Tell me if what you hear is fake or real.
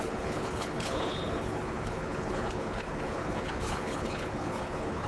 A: fake